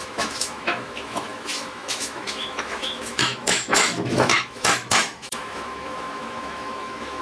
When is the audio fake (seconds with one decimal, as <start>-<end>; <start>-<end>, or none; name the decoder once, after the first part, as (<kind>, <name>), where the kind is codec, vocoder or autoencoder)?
0.0-7.2 (autoencoder, DAC-VAE)